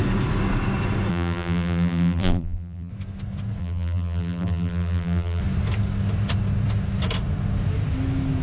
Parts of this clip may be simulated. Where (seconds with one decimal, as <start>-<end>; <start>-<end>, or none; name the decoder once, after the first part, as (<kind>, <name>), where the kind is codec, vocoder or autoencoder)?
1.1-2.9 (vocoder, BigVGAN v2); 3.6-5.4

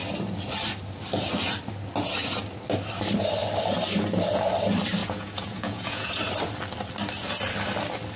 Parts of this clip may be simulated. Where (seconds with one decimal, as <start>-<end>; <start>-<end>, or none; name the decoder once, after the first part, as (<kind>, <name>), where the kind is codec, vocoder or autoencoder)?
5.0-6.1 (vocoder, Vocos)